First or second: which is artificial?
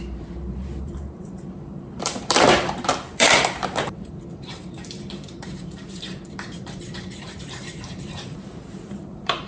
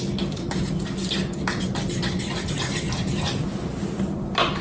first